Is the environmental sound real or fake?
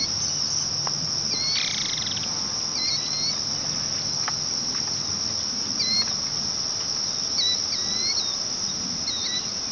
real